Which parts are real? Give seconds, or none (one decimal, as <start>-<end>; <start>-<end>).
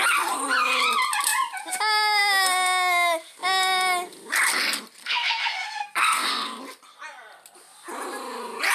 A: 0.0-5.0; 6.6-8.7